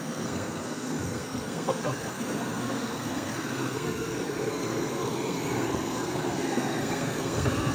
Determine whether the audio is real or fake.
fake